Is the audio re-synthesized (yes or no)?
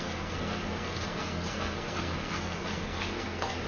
yes